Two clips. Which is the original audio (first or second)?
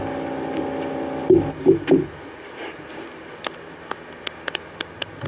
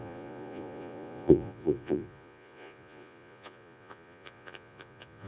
first